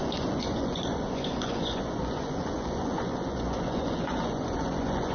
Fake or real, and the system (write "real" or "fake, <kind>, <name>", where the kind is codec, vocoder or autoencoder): fake, vocoder, Vocos